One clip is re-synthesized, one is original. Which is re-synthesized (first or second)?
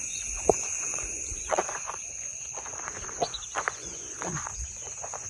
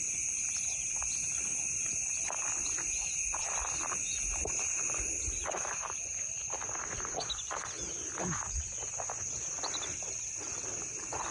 first